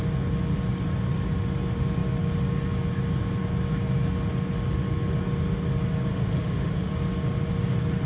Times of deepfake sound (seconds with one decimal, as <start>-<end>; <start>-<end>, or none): 6.1-6.9